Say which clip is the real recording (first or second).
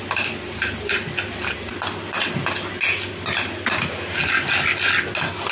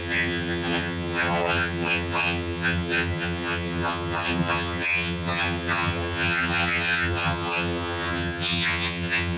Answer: first